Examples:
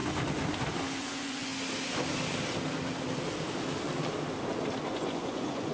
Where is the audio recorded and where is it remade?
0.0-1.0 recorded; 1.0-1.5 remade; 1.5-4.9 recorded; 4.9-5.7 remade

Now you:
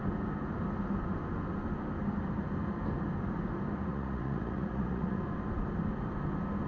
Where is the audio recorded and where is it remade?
0.0-3.9 recorded; 3.9-5.2 remade; 5.2-6.7 recorded